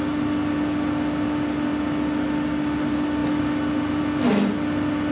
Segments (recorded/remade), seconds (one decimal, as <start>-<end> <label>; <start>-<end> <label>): 0.0-5.1 recorded